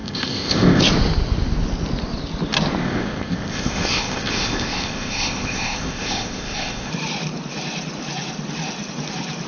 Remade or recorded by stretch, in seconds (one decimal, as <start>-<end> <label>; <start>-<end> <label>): 0.0-0.8 remade; 0.8-2.8 recorded; 2.8-6.9 remade; 6.9-9.5 recorded